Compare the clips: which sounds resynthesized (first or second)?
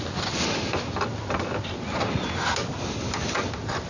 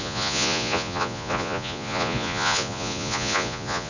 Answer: second